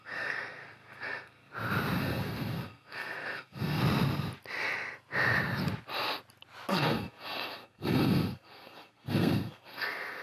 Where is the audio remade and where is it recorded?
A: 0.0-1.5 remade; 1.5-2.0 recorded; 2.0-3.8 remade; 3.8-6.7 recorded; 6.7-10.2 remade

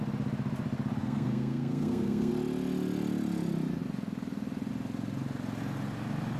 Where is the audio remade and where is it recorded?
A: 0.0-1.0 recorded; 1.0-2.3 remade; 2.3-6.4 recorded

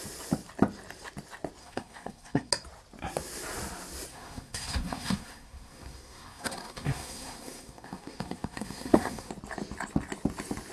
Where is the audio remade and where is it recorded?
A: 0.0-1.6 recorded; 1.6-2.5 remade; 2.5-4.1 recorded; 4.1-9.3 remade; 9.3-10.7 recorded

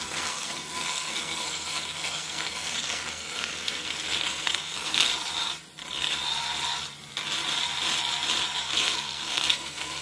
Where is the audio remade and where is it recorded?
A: 0.0-5.1 remade; 5.1-8.6 recorded; 8.6-10.0 remade

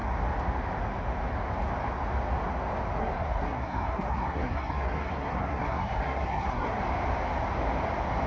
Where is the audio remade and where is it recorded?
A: 0.0-3.0 recorded; 3.0-6.8 remade; 6.8-8.3 recorded

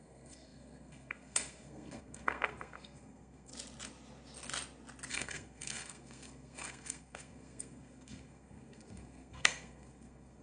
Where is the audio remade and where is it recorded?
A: 0.0-3.5 remade; 3.5-5.1 recorded; 5.1-10.4 remade

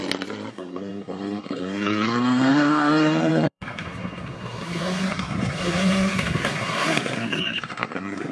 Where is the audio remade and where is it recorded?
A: 0.0-0.5 recorded; 0.5-8.3 remade

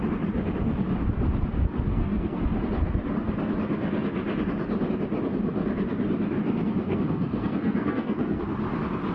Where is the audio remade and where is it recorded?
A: 0.0-1.9 recorded; 1.9-2.4 remade; 2.4-6.4 recorded; 6.4-8.4 remade; 8.4-9.1 recorded